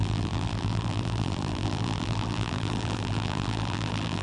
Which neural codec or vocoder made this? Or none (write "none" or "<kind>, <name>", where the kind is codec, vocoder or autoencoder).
vocoder, BigVGAN v2